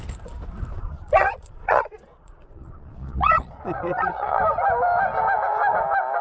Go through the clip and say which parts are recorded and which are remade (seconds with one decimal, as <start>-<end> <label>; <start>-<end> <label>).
0.0-0.7 recorded; 0.7-4.4 remade; 4.4-6.2 recorded